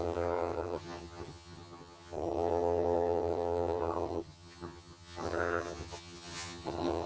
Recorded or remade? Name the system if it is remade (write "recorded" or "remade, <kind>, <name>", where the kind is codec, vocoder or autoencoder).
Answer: remade, vocoder, HiFi-GAN